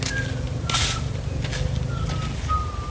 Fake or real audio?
real